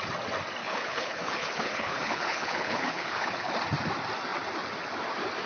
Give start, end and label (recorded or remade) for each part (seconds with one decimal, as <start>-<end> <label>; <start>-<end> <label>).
0.0-0.6 recorded; 0.6-3.5 remade; 3.5-5.5 recorded